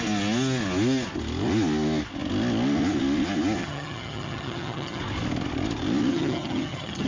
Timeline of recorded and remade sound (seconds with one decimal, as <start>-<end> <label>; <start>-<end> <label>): 0.0-3.6 recorded; 3.6-5.0 remade; 5.0-6.1 recorded; 6.1-7.1 remade